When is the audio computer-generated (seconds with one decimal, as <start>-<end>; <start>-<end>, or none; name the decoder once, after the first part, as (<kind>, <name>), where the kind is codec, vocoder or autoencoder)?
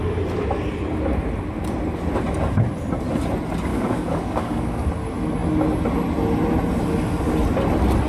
3.7-4.9 (codec, DAC)